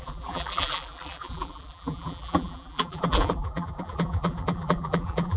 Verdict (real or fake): fake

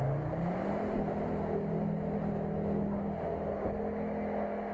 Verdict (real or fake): real